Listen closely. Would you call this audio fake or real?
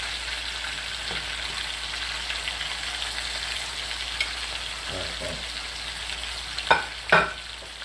real